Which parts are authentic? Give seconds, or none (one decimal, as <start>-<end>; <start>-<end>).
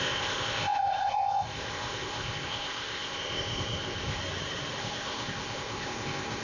4.2-4.8